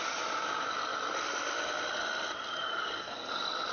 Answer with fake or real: real